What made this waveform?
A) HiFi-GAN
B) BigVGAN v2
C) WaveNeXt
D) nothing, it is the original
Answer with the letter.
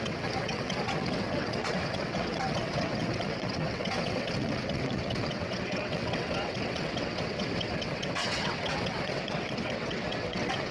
C